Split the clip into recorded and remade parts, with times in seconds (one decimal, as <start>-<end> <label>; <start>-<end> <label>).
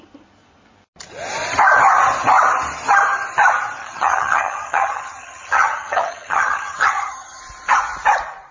0.0-3.8 recorded; 3.8-7.4 remade; 7.4-8.5 recorded